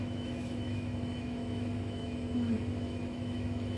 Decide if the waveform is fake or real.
fake